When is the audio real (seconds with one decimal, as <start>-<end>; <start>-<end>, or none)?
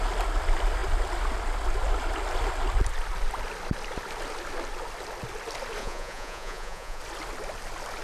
0.0-5.8; 7.0-8.0